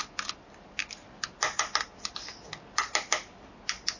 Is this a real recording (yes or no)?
yes